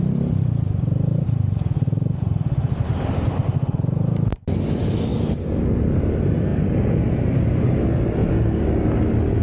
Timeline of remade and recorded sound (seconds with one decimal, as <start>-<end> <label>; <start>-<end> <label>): 0.0-5.1 remade; 5.1-6.0 recorded; 6.0-8.2 remade; 8.2-9.4 recorded